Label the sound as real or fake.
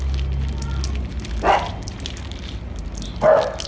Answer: real